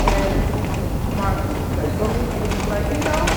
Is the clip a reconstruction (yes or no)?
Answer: no